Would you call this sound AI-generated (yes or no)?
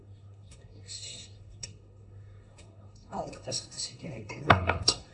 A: yes